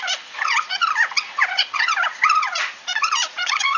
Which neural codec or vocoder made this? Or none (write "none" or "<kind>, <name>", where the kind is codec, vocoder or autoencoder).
vocoder, Vocos